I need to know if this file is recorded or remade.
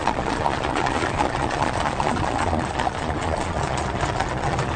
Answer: remade